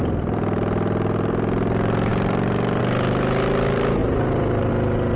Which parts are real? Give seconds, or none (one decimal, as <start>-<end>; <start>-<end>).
0.0-4.0; 4.7-5.2